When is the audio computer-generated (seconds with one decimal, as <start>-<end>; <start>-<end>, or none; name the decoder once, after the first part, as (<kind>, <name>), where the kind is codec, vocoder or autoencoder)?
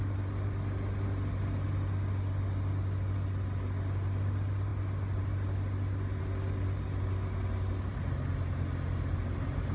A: none